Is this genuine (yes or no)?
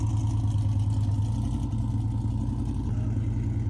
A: yes